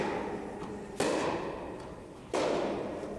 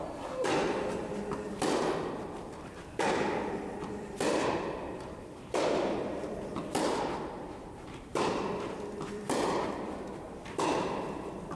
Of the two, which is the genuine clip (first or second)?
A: first